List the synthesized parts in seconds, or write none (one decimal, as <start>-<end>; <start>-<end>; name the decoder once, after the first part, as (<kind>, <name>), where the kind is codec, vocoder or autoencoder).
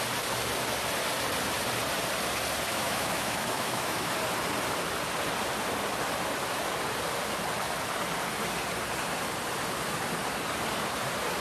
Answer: 2.7-4.1 (autoencoder, DAC-VAE)